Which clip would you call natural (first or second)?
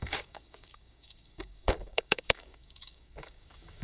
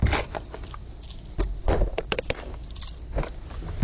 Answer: second